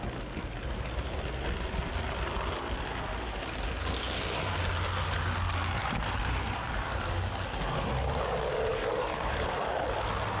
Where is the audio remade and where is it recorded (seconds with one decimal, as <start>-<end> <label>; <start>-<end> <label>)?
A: 0.0-10.4 recorded